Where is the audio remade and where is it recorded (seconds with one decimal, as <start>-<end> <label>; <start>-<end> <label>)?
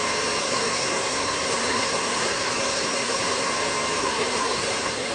0.0-0.4 recorded; 0.4-3.5 remade; 3.5-4.0 recorded; 4.0-5.1 remade